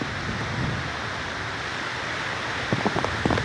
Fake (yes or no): no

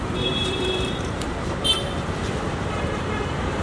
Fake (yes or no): yes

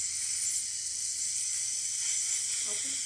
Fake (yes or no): no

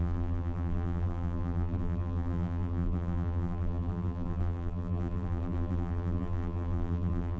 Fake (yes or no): yes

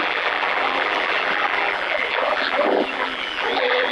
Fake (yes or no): yes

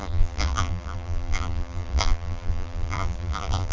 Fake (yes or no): yes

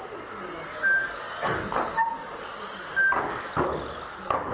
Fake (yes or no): no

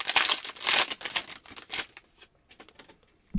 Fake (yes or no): no